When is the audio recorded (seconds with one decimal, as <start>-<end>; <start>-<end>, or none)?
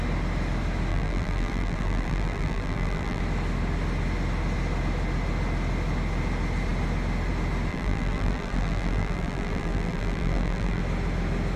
0.0-0.9; 3.2-7.7; 10.8-11.6